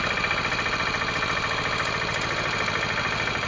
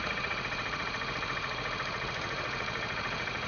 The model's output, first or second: second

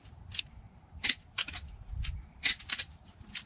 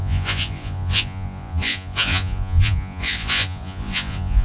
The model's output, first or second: second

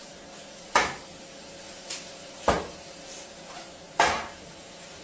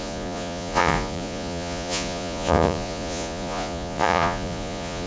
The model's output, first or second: second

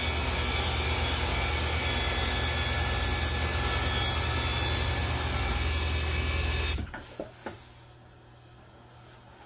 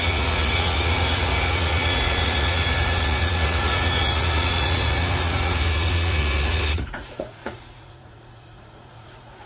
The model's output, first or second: second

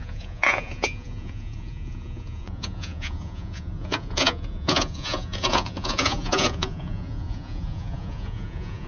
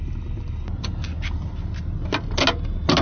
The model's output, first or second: first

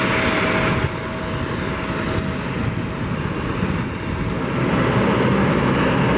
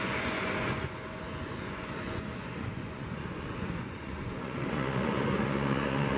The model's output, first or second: second